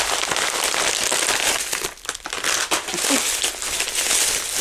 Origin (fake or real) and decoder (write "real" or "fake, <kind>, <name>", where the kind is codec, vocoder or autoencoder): real